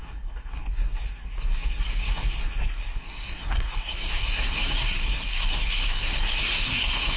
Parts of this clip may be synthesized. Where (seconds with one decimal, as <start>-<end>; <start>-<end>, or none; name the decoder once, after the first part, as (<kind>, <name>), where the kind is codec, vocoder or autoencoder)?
0.0-7.2 (codec, SNAC)